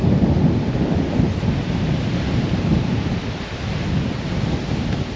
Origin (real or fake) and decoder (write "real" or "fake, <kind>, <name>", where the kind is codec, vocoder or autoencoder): real